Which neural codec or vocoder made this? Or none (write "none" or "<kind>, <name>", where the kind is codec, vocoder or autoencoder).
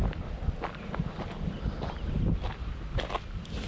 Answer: none